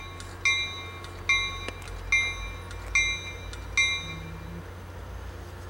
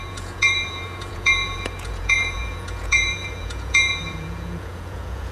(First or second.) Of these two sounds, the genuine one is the first